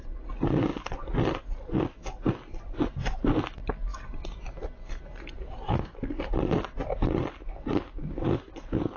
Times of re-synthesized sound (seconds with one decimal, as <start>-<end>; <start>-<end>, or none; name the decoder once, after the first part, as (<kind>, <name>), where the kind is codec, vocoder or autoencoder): none

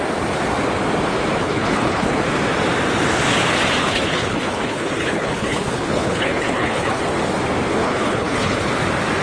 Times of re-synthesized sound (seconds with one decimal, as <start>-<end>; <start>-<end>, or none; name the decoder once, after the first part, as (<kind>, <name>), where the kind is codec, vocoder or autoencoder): 1.4-2.2 (codec, HILCodec); 3.8-7.0; 7.7-8.7